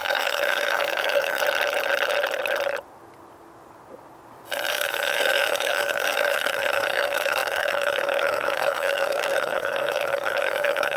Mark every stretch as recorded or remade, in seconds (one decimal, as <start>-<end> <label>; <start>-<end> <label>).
0.0-1.4 remade; 1.4-4.7 recorded; 4.7-11.0 remade